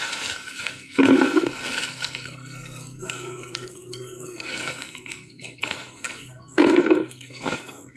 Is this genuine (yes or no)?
no